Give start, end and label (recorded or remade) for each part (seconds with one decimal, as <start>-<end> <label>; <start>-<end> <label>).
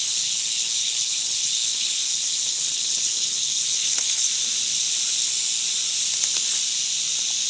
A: 0.0-4.3 remade; 4.3-7.5 recorded